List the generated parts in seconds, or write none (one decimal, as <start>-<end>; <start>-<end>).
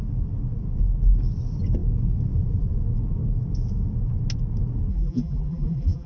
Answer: 4.9-6.1